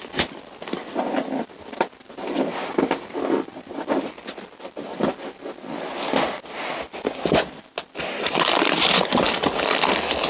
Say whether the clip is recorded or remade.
recorded